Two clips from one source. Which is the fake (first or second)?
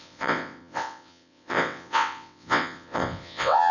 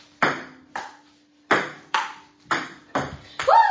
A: first